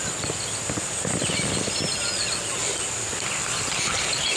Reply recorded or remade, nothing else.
recorded